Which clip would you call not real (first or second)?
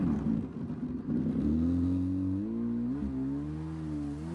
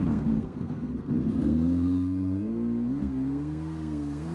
second